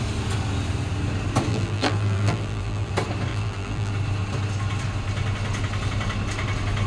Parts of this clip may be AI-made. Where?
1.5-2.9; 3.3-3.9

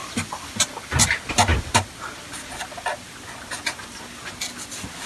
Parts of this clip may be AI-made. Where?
none

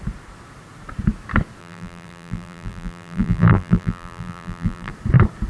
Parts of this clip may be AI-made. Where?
1.6-4.9

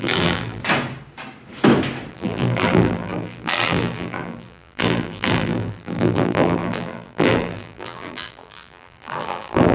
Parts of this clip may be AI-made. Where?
0.0-0.6; 2.1-9.7

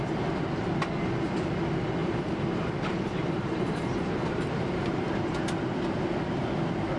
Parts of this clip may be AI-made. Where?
2.0-5.1

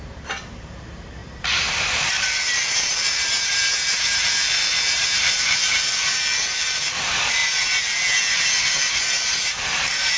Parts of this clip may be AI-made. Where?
0.0-10.2